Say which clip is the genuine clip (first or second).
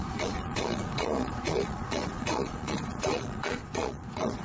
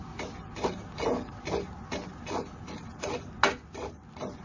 second